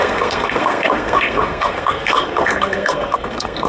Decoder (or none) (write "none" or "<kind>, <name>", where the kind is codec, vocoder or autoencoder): codec, SNAC